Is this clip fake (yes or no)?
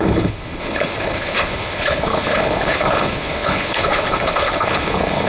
yes